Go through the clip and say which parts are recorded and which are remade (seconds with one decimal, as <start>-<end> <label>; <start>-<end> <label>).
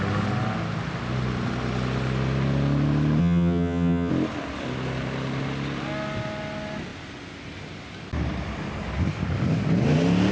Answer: 0.0-3.2 recorded; 3.2-4.1 remade; 4.1-10.3 recorded